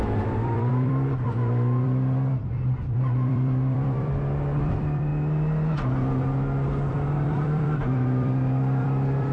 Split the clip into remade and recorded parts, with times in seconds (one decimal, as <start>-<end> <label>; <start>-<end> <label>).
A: 0.0-5.1 remade; 5.1-6.9 recorded; 6.9-9.3 remade